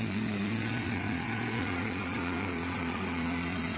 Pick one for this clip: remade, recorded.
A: remade